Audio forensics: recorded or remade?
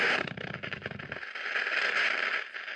recorded